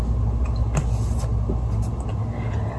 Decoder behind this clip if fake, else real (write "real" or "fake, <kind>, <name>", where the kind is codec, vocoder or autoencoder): real